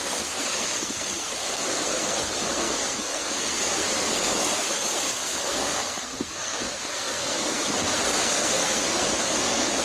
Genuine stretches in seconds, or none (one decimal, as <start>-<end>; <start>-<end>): none